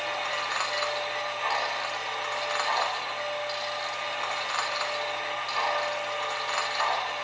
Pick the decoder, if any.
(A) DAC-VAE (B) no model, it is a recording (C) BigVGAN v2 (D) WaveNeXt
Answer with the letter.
B